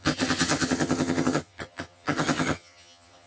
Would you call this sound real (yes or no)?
no